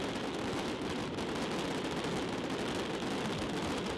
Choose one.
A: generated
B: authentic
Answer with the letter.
B